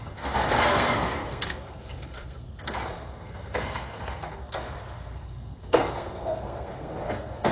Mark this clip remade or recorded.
remade